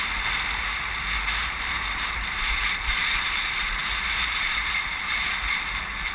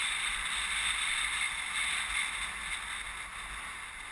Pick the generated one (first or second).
first